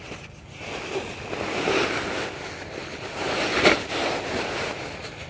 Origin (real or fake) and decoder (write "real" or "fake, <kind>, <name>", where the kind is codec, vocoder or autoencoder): real